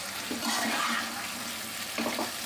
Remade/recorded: recorded